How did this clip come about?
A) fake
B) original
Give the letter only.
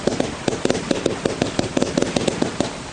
B